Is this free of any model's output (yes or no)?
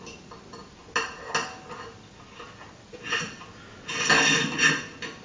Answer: yes